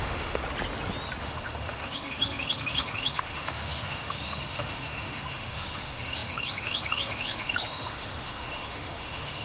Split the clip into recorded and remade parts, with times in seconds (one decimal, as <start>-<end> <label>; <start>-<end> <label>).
0.0-0.4 remade; 0.4-1.2 recorded; 1.2-9.4 remade